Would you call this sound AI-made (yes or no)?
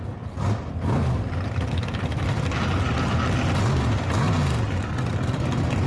no